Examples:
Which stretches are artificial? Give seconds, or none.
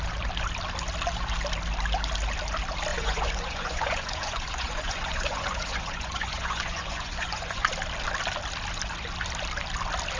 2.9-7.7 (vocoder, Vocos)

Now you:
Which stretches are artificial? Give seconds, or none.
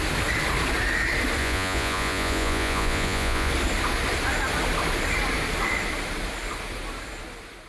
1.4-3.5 (vocoder, Vocos)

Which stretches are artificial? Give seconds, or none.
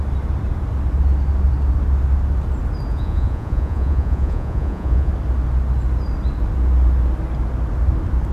2.9-5.1 (vocoder, Vocos)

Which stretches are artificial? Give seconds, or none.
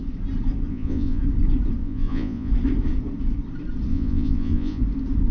0.7-1.2 (vocoder, Vocos); 1.8-2.5; 3.9-4.8